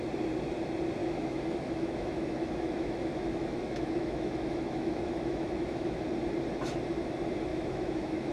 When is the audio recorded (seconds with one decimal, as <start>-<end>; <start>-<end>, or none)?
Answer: 0.0-1.0; 6.0-7.5